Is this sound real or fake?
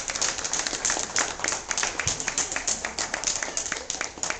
real